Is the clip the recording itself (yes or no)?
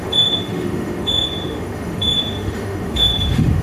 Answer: no